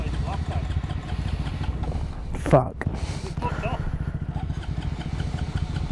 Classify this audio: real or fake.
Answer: real